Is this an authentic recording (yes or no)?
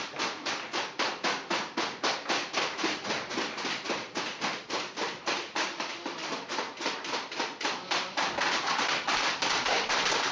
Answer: no